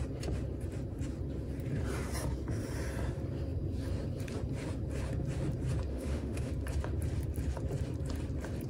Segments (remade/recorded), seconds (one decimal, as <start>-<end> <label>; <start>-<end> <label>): 0.0-5.9 recorded; 5.9-6.5 remade; 6.5-8.7 recorded